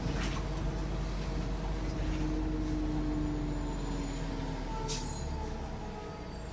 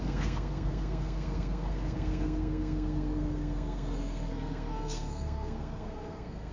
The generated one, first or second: second